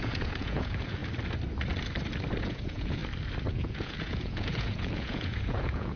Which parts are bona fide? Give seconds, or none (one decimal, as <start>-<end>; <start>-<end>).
1.0-2.4; 3.0-3.5